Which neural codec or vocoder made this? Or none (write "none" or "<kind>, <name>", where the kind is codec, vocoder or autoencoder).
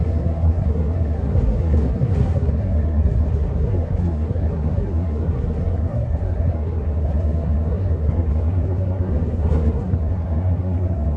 codec, SNAC